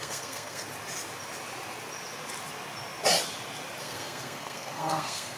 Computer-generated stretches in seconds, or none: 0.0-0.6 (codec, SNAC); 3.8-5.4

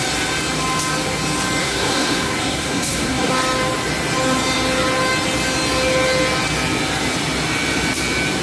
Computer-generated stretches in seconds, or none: 1.6-3.3 (codec, SNAC)

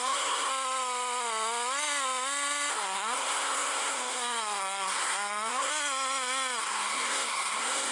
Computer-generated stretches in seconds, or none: 0.0-0.5 (codec, SNAC); 2.7-5.7; 6.6-7.9

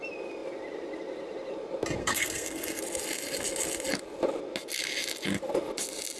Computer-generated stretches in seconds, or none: 2.0-2.8 (codec, SNAC)

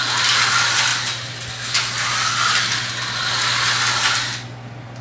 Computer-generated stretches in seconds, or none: none

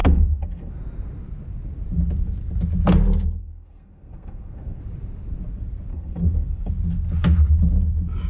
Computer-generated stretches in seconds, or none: 0.0-0.7 (codec, SNAC); 3.4-4.8; 5.9-6.7